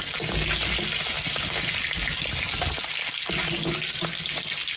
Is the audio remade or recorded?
recorded